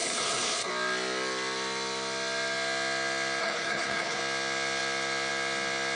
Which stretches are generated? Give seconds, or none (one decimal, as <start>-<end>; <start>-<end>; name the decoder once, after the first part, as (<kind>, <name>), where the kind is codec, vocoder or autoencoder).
0.0-0.7 (codec, HILCodec); 3.4-4.2